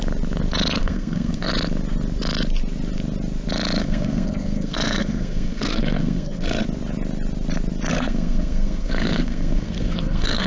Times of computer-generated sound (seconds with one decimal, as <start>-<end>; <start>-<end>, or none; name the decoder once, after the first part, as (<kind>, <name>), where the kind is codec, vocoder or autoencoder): 0.8-1.5 (codec, SNAC); 3.8-6.6; 7.9-10.5